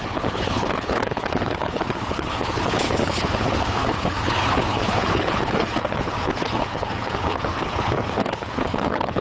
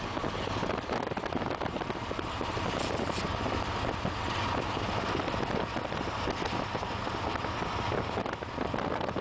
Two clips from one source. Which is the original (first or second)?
second